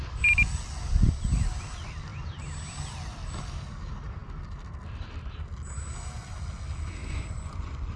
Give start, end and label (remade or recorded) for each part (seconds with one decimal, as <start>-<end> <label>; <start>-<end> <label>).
0.0-7.0 recorded; 7.0-8.0 remade